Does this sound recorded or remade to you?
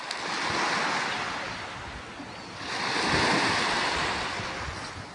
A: recorded